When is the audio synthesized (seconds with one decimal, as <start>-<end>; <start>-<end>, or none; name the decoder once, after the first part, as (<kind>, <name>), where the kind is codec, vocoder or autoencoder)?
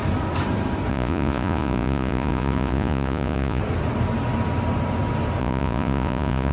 0.9-3.6 (vocoder, Vocos); 5.4-6.5